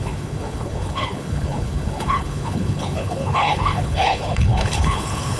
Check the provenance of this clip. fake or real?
fake